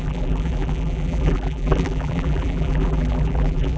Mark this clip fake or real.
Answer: fake